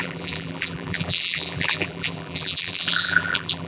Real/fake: fake